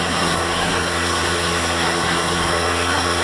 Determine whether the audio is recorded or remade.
remade